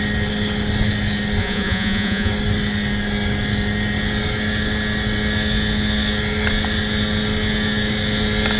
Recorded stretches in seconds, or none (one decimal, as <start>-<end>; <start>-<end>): 0.0-1.4; 2.3-8.6